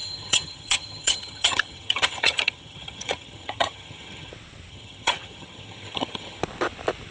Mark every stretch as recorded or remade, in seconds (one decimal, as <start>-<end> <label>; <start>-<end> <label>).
0.0-4.3 remade; 4.3-4.7 recorded; 4.7-6.4 remade; 6.4-7.1 recorded